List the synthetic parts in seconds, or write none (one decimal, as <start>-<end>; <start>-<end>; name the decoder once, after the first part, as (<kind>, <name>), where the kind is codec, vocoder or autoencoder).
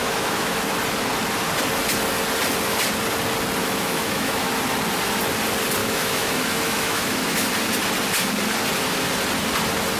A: 0.0-0.5 (autoencoder, DAC-VAE); 3.6-4.5; 5.8-7.5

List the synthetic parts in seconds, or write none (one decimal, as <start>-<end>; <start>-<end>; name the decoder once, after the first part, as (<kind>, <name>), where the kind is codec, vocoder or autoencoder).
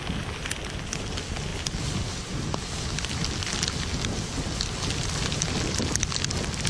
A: none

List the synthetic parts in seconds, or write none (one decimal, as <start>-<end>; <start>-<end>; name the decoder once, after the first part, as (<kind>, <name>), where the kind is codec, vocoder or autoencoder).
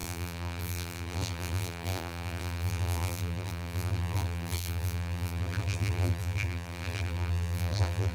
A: 0.0-8.1 (vocoder, BigVGAN v2)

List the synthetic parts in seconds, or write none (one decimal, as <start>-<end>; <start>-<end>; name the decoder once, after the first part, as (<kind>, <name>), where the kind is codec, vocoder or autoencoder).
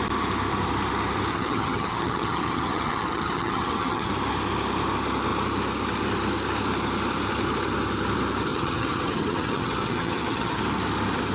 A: 1.3-4.1 (vocoder, HiFi-GAN); 8.5-10.6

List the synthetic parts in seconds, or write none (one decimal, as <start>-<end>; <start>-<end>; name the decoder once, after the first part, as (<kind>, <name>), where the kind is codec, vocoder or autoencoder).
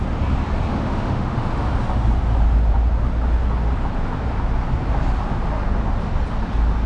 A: 0.7-1.7 (autoencoder, DAC-VAE)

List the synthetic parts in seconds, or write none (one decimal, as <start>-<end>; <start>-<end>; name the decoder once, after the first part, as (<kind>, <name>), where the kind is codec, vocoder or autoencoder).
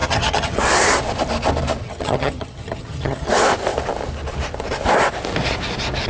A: 0.0-0.6 (vocoder, HiFi-GAN); 1.8-3.3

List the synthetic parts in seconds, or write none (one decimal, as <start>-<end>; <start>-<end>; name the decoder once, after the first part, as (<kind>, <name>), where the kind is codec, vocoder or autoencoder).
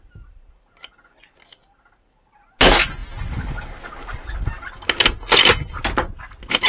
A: none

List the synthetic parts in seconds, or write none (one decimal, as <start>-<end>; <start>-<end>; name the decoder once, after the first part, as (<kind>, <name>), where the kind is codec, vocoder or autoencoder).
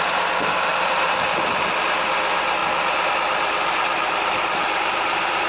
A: none